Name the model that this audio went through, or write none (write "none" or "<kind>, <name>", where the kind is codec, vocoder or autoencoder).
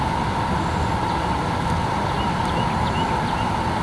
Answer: none